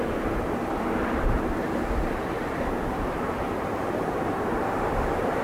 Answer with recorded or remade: remade